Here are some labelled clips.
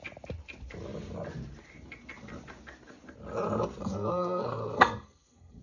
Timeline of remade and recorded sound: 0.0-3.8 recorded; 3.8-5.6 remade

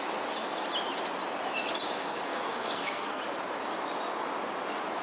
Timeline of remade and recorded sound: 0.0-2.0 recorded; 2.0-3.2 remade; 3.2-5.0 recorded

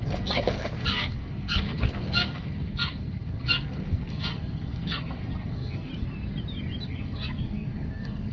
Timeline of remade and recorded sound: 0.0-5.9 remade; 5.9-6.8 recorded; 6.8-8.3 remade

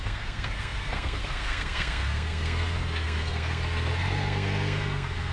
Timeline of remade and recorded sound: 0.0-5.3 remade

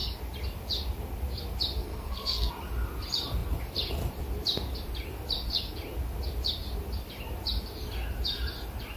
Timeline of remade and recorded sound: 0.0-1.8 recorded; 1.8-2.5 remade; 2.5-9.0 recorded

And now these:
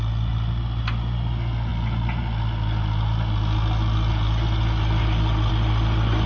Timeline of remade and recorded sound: 0.0-6.3 recorded

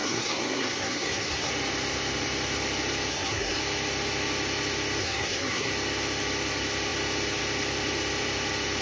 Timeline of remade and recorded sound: 0.0-1.5 remade; 1.5-3.1 recorded; 3.1-3.6 remade; 3.6-5.0 recorded; 5.0-5.7 remade; 5.7-8.8 recorded

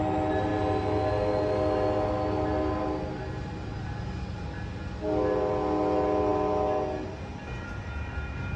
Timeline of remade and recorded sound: 0.0-8.6 recorded